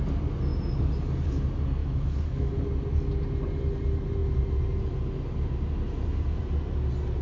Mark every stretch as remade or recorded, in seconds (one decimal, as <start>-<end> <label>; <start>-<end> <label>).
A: 0.0-1.8 recorded; 1.8-2.5 remade; 2.5-7.2 recorded